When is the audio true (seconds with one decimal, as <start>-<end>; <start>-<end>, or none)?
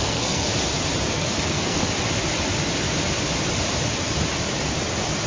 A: 0.5-1.1; 1.8-5.3